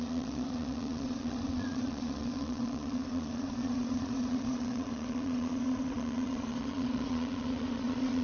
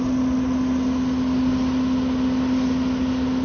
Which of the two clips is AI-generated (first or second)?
first